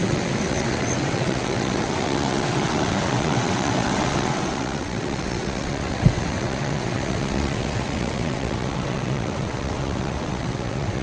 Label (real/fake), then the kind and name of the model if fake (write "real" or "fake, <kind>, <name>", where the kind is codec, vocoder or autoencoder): fake, vocoder, WaveNeXt